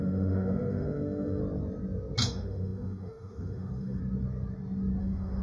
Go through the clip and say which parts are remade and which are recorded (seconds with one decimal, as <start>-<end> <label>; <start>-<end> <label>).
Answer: 0.0-1.4 remade; 1.4-2.2 recorded; 2.2-4.0 remade; 4.0-5.0 recorded; 5.0-5.4 remade